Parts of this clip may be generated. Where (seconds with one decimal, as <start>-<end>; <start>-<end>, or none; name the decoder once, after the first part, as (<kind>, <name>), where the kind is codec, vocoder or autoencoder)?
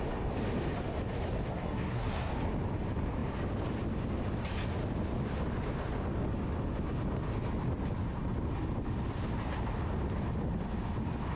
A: 1.5-2.3 (codec, SNAC)